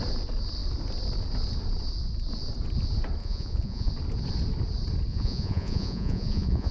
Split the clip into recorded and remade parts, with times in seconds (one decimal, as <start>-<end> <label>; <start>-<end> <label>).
0.0-3.2 recorded; 3.2-3.9 remade; 3.9-5.1 recorded; 5.1-6.7 remade